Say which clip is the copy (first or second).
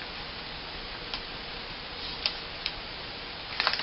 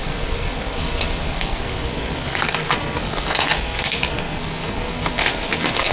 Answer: second